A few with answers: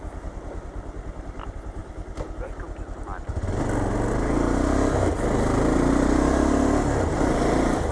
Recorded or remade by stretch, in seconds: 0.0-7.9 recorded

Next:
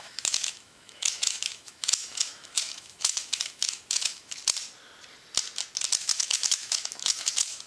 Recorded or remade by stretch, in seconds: 0.0-4.4 remade; 4.4-6.0 recorded; 6.0-7.7 remade

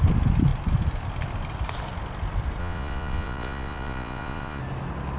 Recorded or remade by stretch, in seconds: 0.0-2.6 recorded; 2.6-4.6 remade; 4.6-5.2 recorded

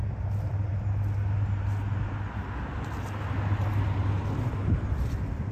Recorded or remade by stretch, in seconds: 0.0-5.5 recorded